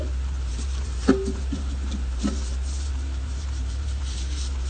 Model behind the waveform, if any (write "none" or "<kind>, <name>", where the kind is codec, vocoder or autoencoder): vocoder, BigVGAN v2